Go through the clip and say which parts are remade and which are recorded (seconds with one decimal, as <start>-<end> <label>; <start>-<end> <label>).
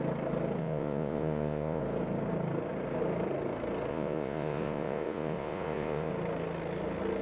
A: 0.0-0.6 recorded; 0.6-1.8 remade; 1.8-3.9 recorded; 3.9-6.1 remade; 6.1-7.2 recorded